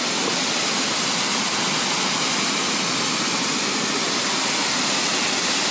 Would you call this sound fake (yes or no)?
no